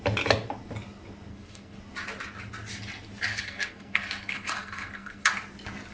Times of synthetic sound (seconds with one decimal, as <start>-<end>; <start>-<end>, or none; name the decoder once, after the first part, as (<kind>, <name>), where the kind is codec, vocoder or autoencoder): 1.3-1.8 (codec, SNAC); 3.3-5.3